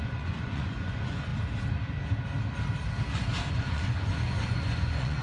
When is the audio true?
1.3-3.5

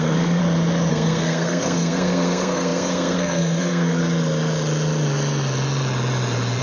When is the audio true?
0.4-0.9; 4.0-6.6

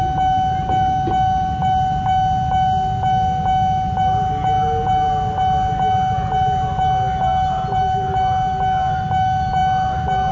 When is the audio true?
0.0-10.3

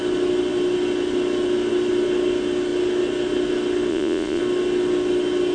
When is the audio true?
0.0-3.9; 4.4-5.5

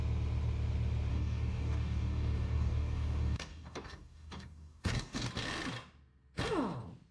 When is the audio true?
0.0-1.1; 5.3-7.1